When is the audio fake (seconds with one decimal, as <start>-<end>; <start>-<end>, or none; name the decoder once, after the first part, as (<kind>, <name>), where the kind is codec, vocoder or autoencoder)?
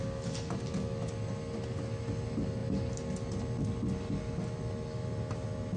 none